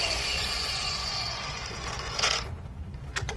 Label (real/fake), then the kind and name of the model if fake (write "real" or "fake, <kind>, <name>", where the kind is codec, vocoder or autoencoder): fake, vocoder, Vocos